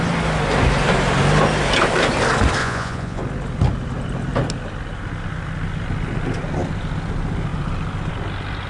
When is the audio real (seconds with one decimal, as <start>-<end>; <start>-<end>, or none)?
0.0-2.6; 3.2-8.7

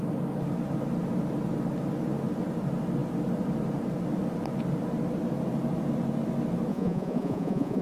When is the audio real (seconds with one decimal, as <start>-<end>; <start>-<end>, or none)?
0.0-6.7

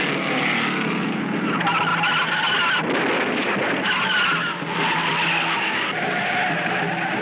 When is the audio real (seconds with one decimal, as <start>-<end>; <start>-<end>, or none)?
0.0-7.2

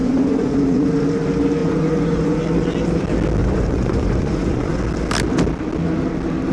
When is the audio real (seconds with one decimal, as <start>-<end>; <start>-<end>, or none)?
0.9-1.6; 2.4-3.4; 4.8-6.5

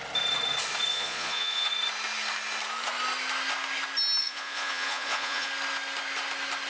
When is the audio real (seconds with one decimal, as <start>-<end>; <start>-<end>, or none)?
0.0-0.9; 1.7-4.2; 5.5-6.7

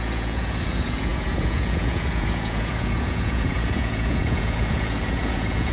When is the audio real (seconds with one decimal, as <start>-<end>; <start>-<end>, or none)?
none